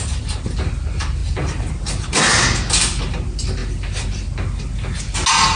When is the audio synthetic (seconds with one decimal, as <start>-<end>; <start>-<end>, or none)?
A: none